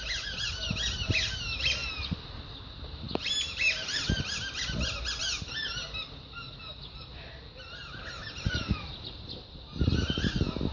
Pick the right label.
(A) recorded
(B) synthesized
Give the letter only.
A